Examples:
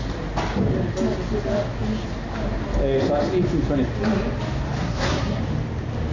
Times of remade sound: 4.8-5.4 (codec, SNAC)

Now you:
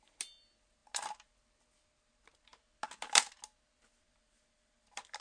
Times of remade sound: none

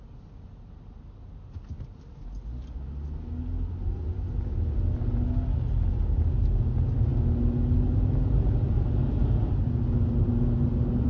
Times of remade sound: none

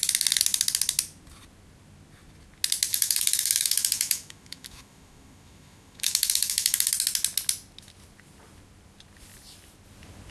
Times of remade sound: 2.9-6.9 (autoencoder, DAC-VAE)

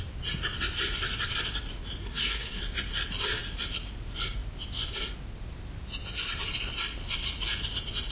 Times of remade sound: 2.0-2.6 (codec, SNAC)

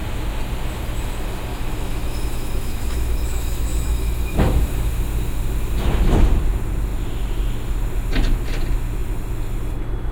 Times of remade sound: 1.5-4.9 (autoencoder, DAC-VAE)

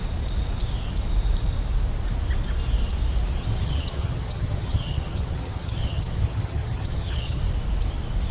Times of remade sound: 3.4-7.4 (vocoder, HiFi-GAN)